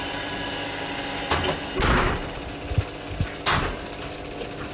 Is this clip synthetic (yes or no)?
no